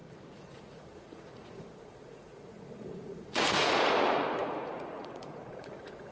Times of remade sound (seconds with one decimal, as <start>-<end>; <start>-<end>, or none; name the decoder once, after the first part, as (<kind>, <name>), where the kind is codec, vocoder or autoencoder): 0.0-6.1 (vocoder, Vocos)